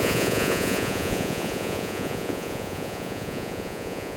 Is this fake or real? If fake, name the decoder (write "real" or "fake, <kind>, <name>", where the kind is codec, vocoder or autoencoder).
fake, vocoder, Vocos